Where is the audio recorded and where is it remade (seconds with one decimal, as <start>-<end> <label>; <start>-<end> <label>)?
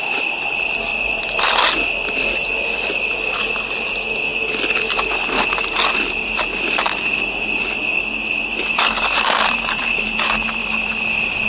0.0-11.5 recorded